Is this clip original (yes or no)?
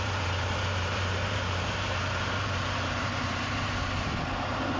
no